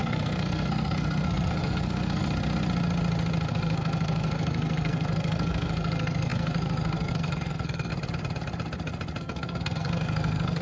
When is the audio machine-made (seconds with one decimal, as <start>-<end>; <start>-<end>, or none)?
0.0-2.2; 3.5-7.9; 9.2-10.6

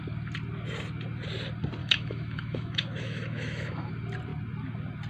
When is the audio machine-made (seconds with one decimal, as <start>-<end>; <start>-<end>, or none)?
1.8-3.9

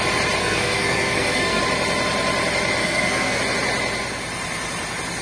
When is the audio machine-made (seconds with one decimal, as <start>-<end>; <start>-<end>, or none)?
0.4-1.6; 2.8-3.4

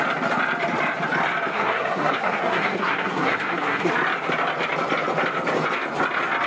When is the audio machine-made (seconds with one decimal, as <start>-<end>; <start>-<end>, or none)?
1.5-3.9

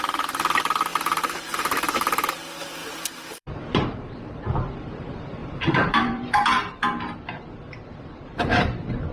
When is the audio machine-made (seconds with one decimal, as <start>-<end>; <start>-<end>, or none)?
0.9-2.3; 2.8-4.4; 5.4-6.7